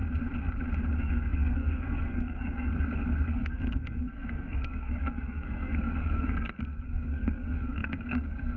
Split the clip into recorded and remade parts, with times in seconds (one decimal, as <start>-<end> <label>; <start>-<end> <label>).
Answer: 0.0-1.0 recorded; 1.0-2.7 remade; 2.7-3.3 recorded; 3.3-8.6 remade